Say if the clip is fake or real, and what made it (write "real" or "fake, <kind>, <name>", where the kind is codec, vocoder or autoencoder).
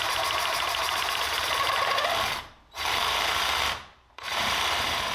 fake, vocoder, BigVGAN v2